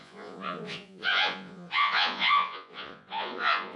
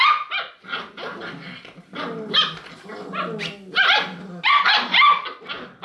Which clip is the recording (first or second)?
second